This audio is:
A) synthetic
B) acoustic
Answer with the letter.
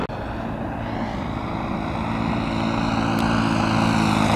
B